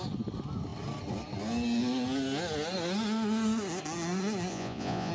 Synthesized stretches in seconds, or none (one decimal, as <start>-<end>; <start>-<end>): 4.5-5.1